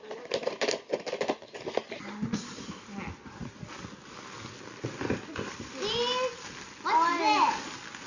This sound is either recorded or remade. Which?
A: recorded